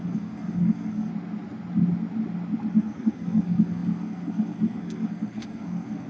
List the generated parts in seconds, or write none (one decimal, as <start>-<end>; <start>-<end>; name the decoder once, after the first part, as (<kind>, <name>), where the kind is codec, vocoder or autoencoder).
0.0-1.1 (codec, SNAC); 2.7-6.1